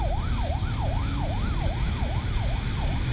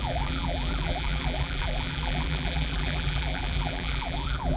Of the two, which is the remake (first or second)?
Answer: second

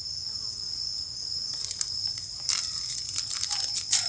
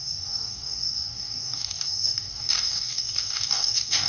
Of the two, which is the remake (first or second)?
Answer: second